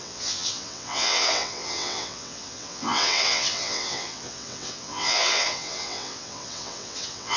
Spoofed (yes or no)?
yes